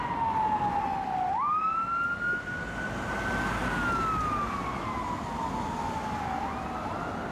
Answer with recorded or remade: recorded